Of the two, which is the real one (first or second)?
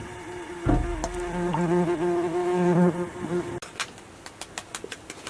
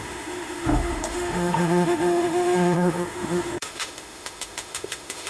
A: first